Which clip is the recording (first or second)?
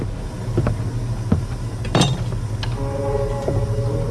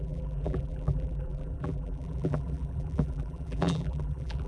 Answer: first